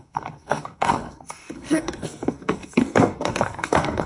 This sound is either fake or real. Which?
fake